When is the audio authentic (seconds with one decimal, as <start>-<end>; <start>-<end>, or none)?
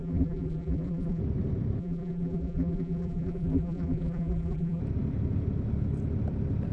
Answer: 1.2-1.8; 4.8-6.7